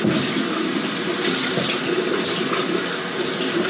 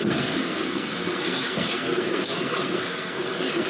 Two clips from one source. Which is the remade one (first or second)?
second